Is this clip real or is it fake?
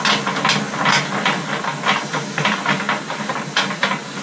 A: real